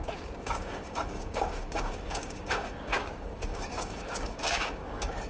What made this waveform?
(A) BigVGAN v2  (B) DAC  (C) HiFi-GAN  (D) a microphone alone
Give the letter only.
B